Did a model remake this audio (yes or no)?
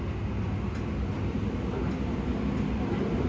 no